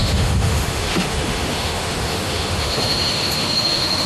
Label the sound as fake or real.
fake